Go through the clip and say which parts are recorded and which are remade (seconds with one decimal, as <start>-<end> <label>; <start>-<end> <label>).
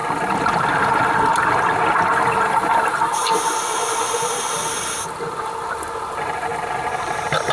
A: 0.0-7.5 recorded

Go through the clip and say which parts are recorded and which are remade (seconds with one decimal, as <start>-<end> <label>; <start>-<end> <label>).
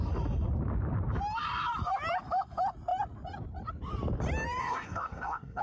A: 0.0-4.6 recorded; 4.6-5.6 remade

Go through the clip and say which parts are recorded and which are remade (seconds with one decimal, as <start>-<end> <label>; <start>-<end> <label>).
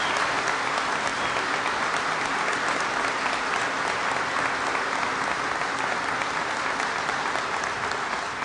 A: 0.0-8.4 recorded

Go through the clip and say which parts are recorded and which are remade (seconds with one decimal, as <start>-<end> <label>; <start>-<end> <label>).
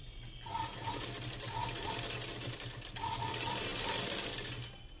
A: 0.0-5.0 recorded